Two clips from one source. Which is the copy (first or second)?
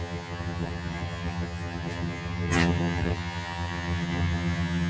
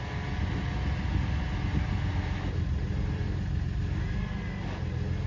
first